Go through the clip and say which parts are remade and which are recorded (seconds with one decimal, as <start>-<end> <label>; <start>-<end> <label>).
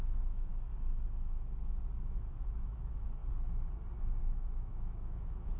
0.0-0.5 remade; 0.5-2.1 recorded; 2.1-3.2 remade; 3.2-4.2 recorded; 4.2-5.6 remade